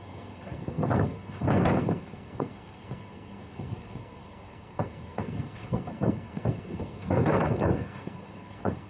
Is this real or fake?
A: fake